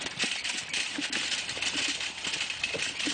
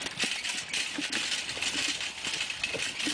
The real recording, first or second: second